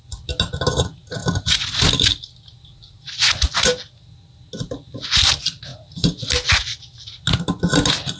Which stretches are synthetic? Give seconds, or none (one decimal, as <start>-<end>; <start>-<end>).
none

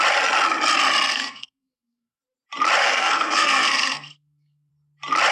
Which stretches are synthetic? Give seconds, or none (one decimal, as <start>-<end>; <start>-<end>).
1.1-2.2; 2.8-4.7